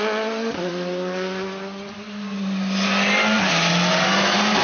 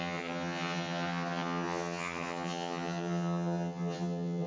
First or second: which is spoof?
second